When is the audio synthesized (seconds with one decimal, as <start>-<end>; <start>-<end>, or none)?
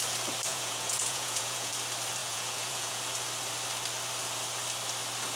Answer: 0.5-1.7; 2.2-3.0